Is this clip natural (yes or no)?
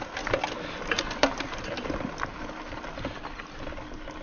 yes